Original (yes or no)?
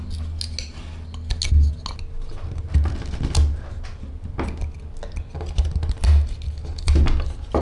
yes